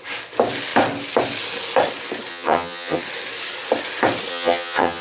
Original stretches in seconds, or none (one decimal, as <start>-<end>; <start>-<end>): 0.0-2.3; 3.0-4.3